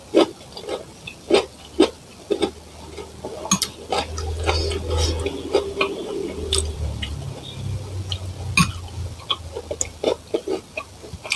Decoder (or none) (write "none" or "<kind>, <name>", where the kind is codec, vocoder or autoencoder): none